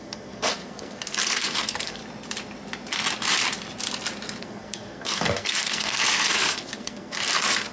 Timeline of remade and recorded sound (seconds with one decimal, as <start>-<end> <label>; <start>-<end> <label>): 0.0-2.0 remade; 2.0-4.4 recorded; 4.4-7.7 remade